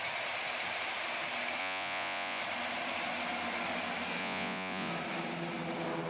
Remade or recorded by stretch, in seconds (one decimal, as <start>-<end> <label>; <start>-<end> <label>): 0.0-1.6 recorded; 1.6-2.4 remade; 2.4-4.2 recorded; 4.2-4.9 remade; 4.9-6.1 recorded